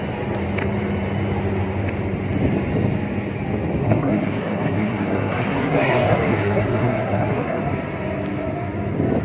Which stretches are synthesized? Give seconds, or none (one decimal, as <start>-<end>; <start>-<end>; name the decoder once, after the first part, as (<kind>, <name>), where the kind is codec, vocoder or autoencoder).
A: 3.8-7.6 (codec, SNAC)